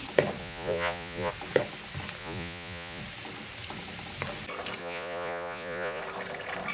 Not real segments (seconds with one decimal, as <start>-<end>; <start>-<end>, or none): 0.4-1.3; 2.2-3.0; 4.8-6.0